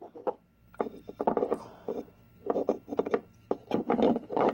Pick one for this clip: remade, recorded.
recorded